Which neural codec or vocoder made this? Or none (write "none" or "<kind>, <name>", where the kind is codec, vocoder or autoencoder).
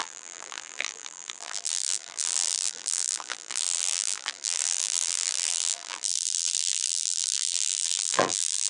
vocoder, BigVGAN v2